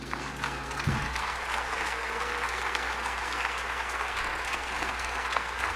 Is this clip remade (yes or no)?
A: yes